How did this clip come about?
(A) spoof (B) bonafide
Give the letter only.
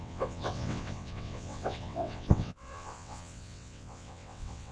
A